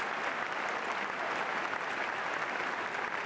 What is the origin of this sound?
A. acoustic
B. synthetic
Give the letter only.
A